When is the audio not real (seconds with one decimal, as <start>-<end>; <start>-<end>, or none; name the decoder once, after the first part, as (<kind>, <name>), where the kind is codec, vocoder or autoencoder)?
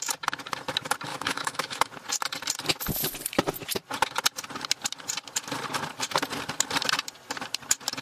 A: 1.1-1.9 (autoencoder, DAC-VAE)